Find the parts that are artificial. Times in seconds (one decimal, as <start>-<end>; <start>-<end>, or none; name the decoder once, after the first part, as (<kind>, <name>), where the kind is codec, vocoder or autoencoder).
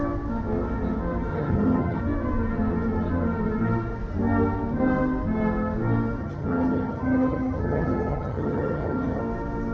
1.3-2.0 (vocoder, HiFi-GAN); 6.2-9.2